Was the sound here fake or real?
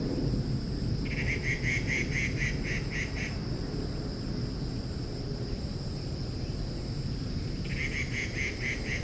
real